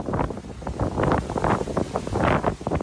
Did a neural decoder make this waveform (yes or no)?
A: no